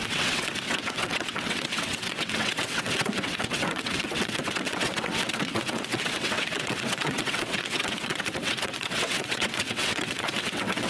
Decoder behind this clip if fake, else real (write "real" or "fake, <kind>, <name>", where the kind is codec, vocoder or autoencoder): fake, vocoder, WaveNeXt